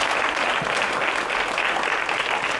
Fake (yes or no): no